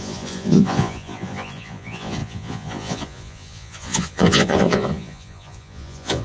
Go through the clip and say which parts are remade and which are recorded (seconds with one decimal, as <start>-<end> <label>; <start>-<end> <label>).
0.0-6.2 remade